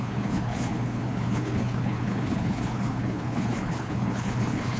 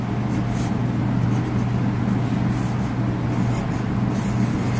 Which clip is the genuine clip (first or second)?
second